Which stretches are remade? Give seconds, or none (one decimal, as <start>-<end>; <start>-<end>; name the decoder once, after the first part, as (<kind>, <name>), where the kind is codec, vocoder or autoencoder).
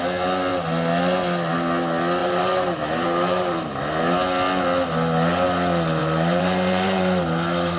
2.2-3.8 (vocoder, BigVGAN v2); 6.0-7.8